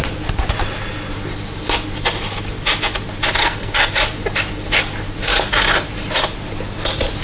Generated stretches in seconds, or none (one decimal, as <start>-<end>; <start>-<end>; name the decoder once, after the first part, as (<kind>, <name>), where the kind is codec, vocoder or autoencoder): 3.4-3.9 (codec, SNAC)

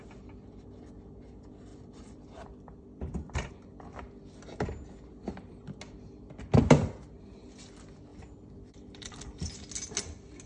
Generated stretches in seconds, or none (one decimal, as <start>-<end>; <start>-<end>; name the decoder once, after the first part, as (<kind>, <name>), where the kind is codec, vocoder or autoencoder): 1.7-3.5 (vocoder, BigVGAN v2); 8.1-9.5

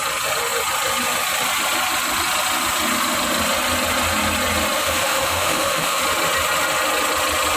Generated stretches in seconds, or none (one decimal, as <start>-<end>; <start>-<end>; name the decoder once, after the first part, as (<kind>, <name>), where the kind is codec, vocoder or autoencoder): 4.8-6.0 (autoencoder, DAC-VAE)

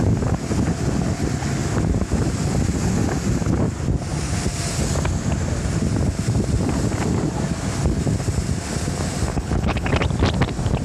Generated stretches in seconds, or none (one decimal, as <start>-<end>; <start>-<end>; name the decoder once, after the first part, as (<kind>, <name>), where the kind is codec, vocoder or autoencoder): 9.3-9.9 (codec, HILCodec)